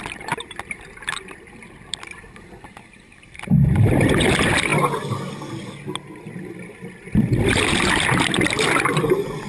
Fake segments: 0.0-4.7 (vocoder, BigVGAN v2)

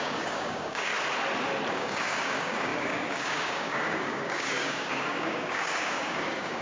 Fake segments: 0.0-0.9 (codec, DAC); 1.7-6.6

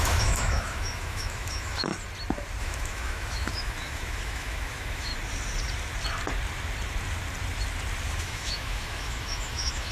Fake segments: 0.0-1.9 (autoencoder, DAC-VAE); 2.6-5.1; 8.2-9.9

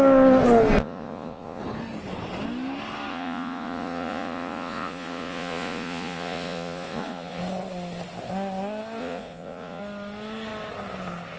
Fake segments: 0.8-1.6 (vocoder, Vocos); 3.1-7.4; 9.0-9.8